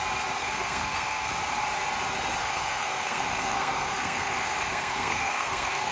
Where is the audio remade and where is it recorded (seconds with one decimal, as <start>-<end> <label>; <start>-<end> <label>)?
0.0-0.4 recorded; 0.4-1.3 remade; 1.3-2.4 recorded; 2.4-5.9 remade

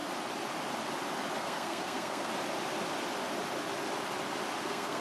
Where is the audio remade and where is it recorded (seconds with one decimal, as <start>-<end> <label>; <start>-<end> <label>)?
0.0-1.4 recorded; 1.4-2.3 remade; 2.3-4.6 recorded; 4.6-5.0 remade